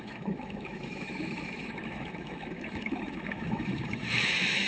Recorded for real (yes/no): no